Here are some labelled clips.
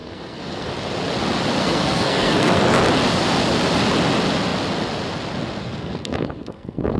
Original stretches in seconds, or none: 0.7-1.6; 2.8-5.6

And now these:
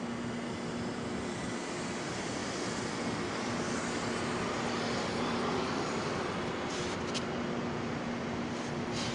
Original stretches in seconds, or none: 0.0-9.1